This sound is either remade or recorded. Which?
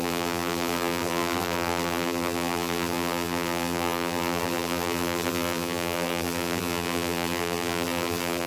remade